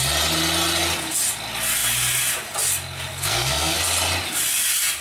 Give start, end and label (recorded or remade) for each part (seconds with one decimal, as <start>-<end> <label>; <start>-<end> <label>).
0.0-3.1 recorded; 3.1-3.8 remade; 3.8-5.0 recorded